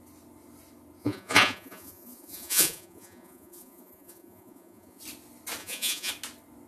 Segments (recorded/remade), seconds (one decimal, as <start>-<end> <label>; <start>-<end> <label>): 0.0-1.0 recorded; 1.0-5.0 remade; 5.0-5.6 recorded; 5.6-6.1 remade; 6.1-6.7 recorded

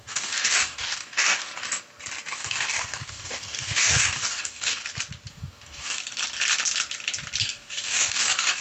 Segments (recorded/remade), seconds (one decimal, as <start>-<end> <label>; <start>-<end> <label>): 0.0-1.5 remade; 1.5-2.3 recorded; 2.3-4.8 remade; 4.8-5.3 recorded; 5.3-6.0 remade; 6.0-7.4 recorded; 7.4-8.6 remade

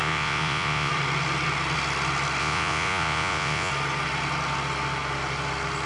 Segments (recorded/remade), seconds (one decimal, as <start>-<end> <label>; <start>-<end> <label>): 0.0-0.9 remade; 0.9-2.4 recorded; 2.4-3.7 remade; 3.7-5.9 recorded